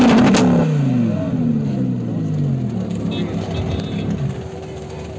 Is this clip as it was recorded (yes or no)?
yes